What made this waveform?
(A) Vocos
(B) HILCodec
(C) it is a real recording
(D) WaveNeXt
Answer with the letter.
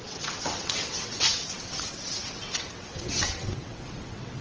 D